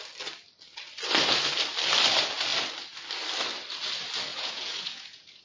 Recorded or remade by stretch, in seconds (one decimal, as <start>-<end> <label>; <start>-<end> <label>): 0.0-4.3 recorded; 4.3-5.4 remade